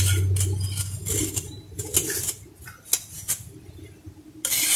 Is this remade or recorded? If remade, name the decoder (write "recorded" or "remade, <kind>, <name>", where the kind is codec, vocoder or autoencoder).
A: recorded